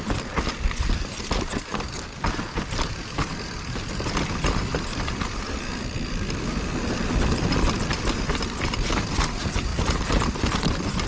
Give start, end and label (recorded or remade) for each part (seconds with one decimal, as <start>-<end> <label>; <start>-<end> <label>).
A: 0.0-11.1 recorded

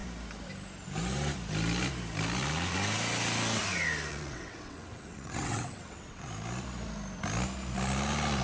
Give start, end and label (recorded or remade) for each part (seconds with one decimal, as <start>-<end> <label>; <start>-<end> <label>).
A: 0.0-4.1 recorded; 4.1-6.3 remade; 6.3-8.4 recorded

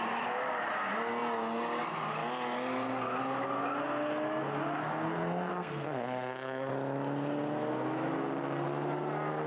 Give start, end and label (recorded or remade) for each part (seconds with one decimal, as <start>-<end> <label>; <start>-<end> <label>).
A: 0.0-5.5 recorded; 5.5-6.7 remade; 6.7-9.5 recorded